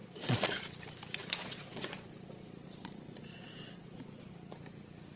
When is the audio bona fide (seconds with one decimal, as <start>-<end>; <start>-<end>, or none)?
0.6-1.2; 4.3-5.2